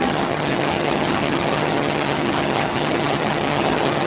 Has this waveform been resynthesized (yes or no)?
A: yes